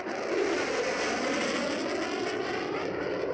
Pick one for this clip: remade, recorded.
recorded